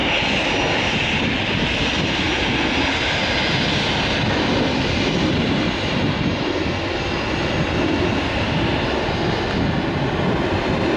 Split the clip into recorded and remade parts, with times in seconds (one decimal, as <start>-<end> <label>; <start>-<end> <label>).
0.0-11.0 recorded